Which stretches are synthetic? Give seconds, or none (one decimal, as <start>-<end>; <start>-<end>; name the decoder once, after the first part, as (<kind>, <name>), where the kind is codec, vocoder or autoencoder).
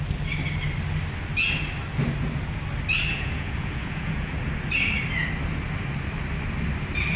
3.1-4.3 (vocoder, Vocos)